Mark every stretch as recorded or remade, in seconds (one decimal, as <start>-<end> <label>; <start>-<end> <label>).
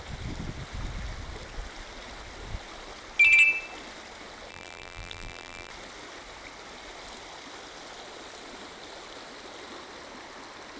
0.0-4.5 recorded; 4.5-5.7 remade; 5.7-10.8 recorded